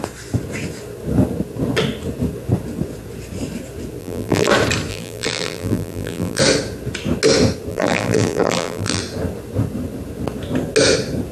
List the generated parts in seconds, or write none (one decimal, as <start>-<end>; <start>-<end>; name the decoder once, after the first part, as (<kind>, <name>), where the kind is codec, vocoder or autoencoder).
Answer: 4.0-4.5 (vocoder, BigVGAN v2); 4.9-6.4; 7.7-9.0